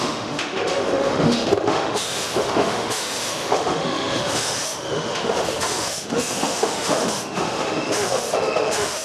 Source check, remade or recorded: remade